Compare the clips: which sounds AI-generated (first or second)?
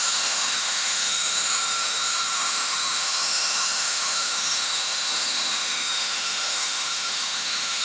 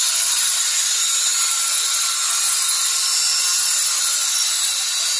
first